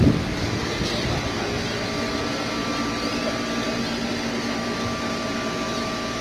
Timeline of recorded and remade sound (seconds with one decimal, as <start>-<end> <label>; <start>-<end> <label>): 0.0-6.2 recorded

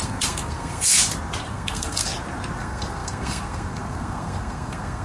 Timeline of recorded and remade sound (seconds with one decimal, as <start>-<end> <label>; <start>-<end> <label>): 0.0-1.0 remade; 1.0-1.5 recorded; 1.5-2.1 remade; 2.1-2.6 recorded; 2.6-5.0 remade

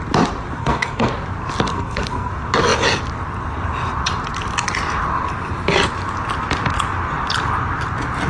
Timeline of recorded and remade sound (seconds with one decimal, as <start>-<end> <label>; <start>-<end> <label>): 0.0-0.6 recorded; 0.6-1.1 remade; 1.1-1.7 recorded; 1.7-2.3 remade; 2.3-8.3 recorded

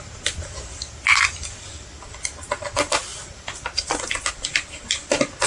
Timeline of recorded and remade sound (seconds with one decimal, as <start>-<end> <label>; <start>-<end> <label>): 0.0-5.5 recorded

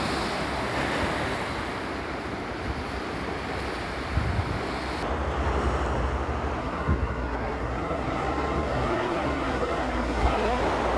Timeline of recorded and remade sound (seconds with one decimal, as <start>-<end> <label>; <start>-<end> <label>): 0.0-6.6 recorded; 6.6-10.6 remade; 10.6-11.0 recorded

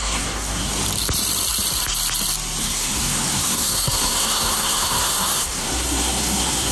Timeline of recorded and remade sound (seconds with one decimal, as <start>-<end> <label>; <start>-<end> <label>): 0.0-0.7 remade; 0.7-2.6 recorded; 2.6-6.7 remade

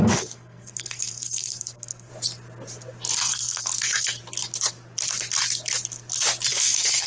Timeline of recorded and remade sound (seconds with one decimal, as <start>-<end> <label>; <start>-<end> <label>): 0.0-2.1 remade; 2.1-3.2 recorded; 3.2-4.2 remade; 4.2-6.5 recorded; 6.5-7.1 remade

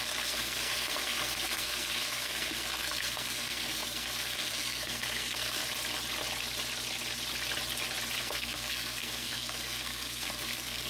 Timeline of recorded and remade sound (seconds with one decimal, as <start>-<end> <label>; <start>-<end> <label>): 0.0-5.6 remade; 5.6-8.2 recorded; 8.2-10.9 remade